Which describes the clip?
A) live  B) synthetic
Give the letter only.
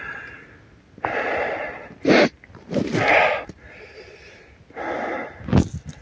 A